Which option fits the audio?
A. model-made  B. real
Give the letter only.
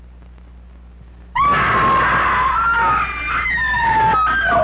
B